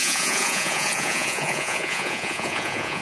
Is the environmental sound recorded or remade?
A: remade